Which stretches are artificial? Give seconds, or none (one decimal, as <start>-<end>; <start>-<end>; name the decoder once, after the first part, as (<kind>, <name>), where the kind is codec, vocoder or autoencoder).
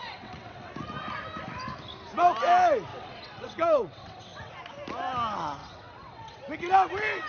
0.0-0.7 (vocoder, WaveNeXt); 2.9-4.5; 5.6-6.4